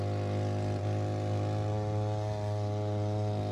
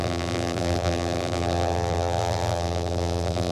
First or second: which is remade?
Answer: second